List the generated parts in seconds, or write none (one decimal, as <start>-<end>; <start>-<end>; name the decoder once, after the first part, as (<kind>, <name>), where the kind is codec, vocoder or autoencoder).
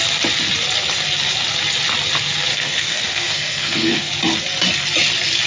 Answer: 2.5-4.1 (codec, SNAC)